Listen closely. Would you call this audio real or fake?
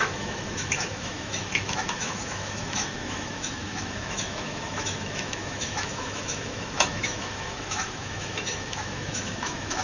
fake